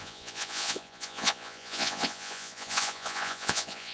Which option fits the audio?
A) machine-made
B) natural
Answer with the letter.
A